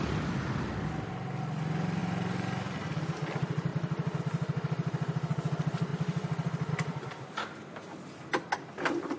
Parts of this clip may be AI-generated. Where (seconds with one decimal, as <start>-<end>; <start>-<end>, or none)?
none